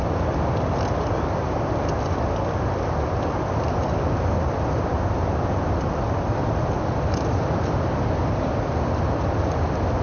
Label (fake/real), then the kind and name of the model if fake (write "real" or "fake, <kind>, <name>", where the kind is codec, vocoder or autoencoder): real